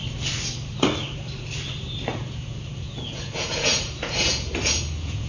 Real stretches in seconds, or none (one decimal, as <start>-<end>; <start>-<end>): 0.0-2.1